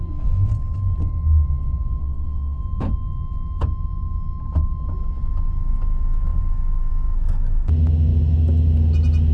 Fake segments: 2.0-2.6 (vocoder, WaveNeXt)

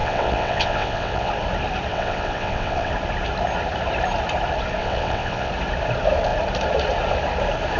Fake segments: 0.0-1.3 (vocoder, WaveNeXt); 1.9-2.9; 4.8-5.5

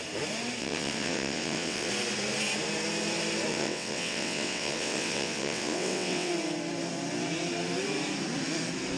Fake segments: 0.6-1.9 (vocoder, WaveNeXt); 3.5-6.3